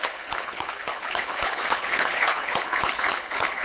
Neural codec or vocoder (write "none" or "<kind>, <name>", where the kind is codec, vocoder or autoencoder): codec, HILCodec